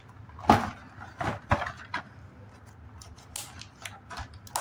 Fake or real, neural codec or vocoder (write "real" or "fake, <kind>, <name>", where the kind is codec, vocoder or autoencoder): real